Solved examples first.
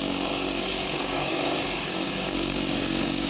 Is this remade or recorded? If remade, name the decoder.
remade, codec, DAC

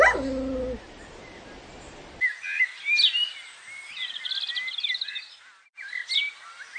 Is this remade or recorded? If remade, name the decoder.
recorded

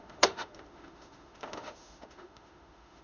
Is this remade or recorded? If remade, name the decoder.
remade, autoencoder, DAC-VAE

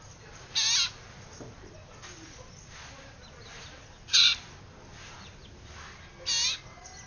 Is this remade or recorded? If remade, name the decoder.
recorded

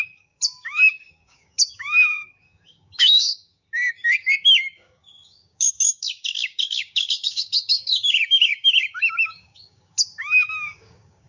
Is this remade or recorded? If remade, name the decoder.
remade, codec, DAC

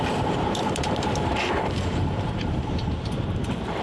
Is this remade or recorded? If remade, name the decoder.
remade, vocoder, BigVGAN v2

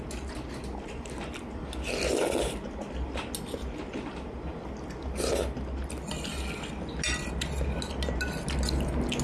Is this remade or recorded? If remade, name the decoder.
recorded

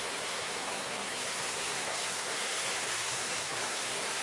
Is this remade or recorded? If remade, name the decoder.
remade, codec, SNAC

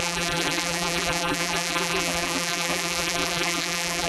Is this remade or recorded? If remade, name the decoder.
remade, vocoder, BigVGAN v2